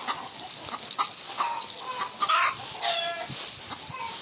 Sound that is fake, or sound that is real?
real